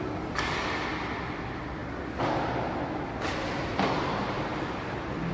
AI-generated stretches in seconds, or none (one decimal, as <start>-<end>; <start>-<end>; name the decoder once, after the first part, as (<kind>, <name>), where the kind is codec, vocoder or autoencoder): none